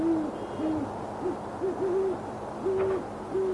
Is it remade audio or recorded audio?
remade